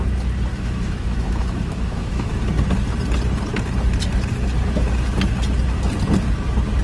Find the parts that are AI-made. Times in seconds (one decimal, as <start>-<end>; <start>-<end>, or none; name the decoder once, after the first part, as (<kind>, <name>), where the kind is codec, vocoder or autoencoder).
0.5-2.3 (autoencoder, DAC-VAE)